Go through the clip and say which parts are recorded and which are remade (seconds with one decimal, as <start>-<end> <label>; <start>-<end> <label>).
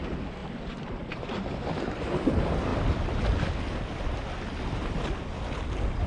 0.0-6.1 recorded